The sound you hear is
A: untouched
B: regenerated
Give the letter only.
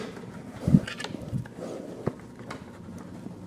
A